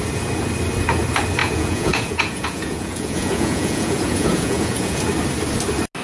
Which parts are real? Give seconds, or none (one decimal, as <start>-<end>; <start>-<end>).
0.0-1.4; 5.0-6.0